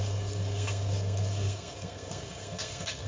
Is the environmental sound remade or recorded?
remade